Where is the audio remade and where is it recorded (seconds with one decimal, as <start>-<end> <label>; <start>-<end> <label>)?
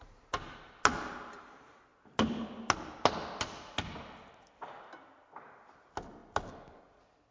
0.0-7.3 recorded